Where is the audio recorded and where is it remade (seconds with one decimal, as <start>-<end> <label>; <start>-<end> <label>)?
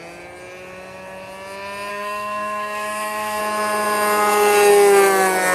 0.0-1.9 recorded; 1.9-3.4 remade; 3.4-5.5 recorded